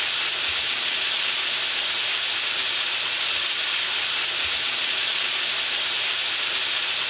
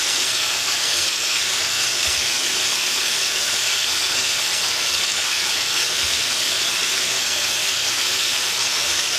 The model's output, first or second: second